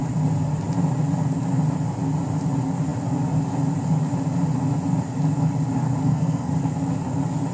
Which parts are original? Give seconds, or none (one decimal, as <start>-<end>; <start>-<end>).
0.0-6.0; 6.5-7.5